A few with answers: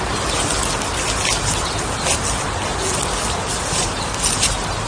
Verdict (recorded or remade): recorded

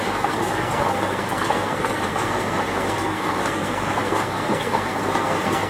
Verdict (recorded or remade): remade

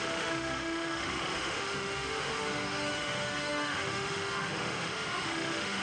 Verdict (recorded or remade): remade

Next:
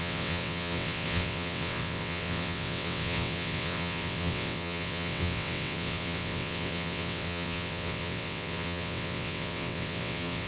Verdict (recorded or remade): remade